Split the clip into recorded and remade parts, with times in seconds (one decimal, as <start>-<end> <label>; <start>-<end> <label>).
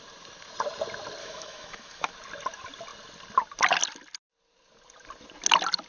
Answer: 0.0-1.2 recorded; 1.2-2.1 remade; 2.1-5.9 recorded